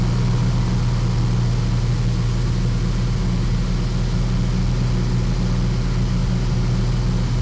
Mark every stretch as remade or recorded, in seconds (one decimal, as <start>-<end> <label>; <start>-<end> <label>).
0.0-7.4 recorded